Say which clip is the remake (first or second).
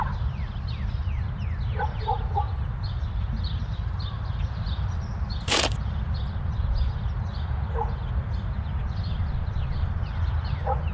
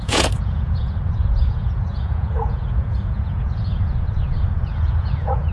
second